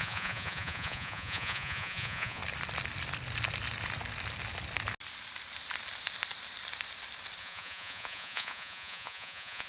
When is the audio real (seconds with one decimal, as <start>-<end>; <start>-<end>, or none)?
2.4-7.4